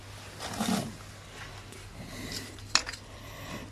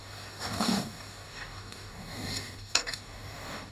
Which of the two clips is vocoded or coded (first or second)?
second